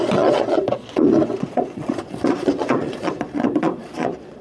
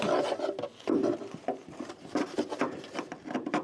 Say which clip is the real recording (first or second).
second